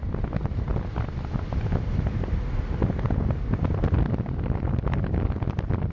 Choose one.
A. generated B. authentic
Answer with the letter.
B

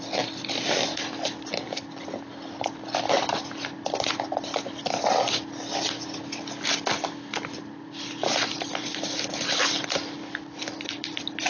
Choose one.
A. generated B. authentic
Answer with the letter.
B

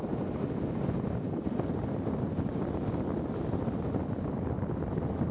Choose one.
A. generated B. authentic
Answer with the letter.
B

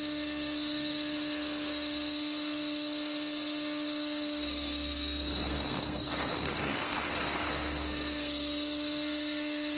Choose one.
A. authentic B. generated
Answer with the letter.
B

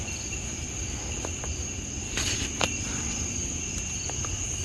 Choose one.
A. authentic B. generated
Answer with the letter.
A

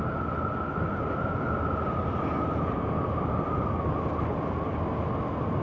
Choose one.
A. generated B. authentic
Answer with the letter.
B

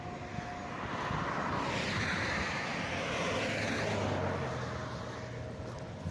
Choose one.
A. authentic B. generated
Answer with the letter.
A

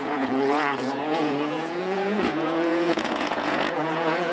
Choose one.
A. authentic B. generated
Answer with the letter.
B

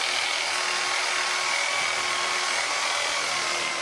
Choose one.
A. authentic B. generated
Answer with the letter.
A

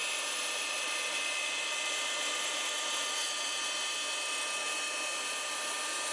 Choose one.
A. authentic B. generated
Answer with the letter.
A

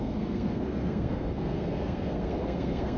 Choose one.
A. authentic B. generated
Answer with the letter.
B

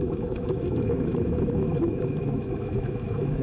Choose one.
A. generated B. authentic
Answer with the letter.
A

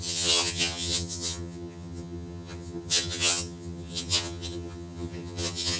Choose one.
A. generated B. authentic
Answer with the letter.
A